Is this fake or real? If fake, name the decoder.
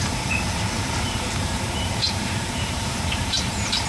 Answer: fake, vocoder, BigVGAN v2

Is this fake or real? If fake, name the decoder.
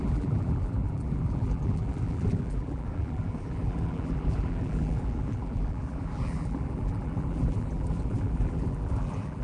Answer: fake, vocoder, BigVGAN v2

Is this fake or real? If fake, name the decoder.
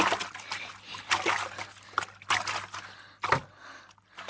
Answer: real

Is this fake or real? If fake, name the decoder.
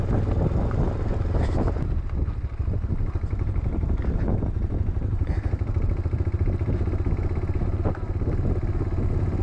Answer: real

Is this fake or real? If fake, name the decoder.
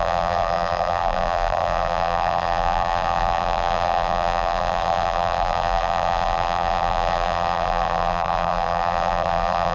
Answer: fake, vocoder, BigVGAN v2